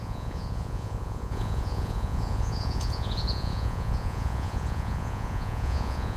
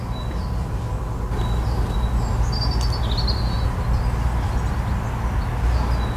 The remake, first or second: first